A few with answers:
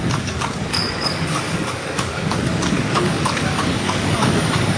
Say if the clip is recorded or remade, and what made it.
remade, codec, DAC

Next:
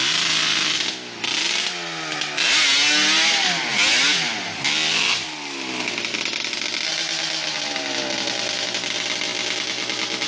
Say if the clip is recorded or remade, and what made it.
recorded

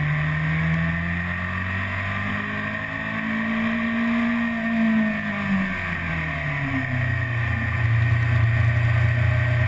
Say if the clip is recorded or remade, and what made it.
recorded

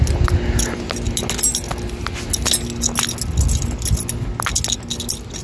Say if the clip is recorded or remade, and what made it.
recorded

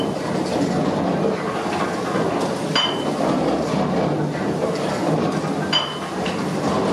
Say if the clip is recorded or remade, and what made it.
recorded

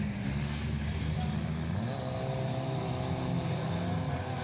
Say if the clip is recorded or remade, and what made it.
recorded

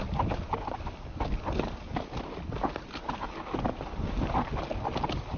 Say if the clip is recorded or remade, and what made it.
recorded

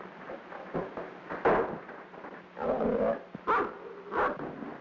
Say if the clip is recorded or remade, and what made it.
recorded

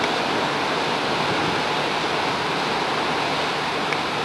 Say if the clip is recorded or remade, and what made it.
recorded